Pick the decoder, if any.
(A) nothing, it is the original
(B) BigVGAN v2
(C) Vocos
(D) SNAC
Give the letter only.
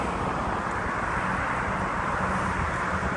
A